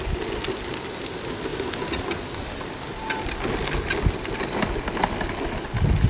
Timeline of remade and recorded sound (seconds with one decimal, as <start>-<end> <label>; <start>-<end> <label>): 0.0-6.1 recorded